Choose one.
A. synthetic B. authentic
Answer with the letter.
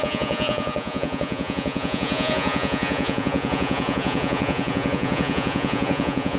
A